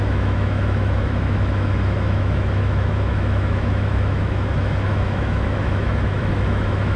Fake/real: fake